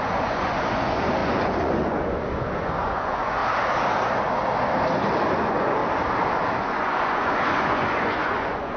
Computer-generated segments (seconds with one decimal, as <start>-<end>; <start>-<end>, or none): 0.0-3.4; 5.3-5.8; 6.6-8.8